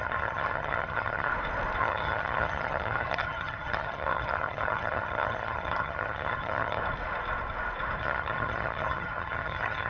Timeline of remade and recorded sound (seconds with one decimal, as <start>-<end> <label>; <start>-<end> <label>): 0.0-1.3 remade; 1.3-1.8 recorded; 1.8-6.8 remade; 6.8-8.0 recorded; 8.0-9.9 remade

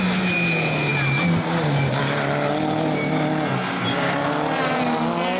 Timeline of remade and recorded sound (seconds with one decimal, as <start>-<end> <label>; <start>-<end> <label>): 0.0-5.4 recorded

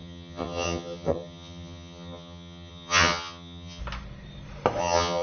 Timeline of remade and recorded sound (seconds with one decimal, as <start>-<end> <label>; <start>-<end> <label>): 0.0-3.8 remade; 3.8-4.8 recorded; 4.8-5.2 remade

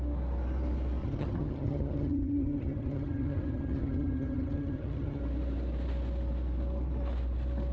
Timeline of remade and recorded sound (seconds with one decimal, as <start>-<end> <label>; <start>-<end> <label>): 0.0-1.0 recorded; 1.0-5.2 remade; 5.2-7.7 recorded

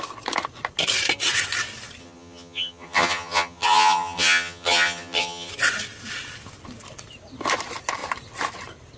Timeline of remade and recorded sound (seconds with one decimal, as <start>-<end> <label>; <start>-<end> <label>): 0.0-2.0 recorded; 2.0-5.5 remade; 5.5-9.0 recorded